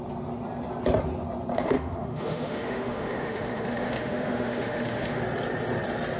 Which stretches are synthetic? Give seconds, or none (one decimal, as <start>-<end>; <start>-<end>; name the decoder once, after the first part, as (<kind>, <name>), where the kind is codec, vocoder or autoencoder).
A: 1.5-5.2 (autoencoder, DAC-VAE)